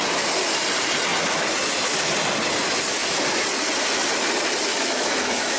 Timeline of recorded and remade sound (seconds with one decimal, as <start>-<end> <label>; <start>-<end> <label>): 0.0-4.7 recorded; 4.7-5.6 remade